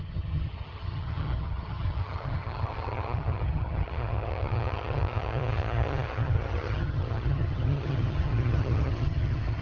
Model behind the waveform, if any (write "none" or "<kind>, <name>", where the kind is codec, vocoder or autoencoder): vocoder, HiFi-GAN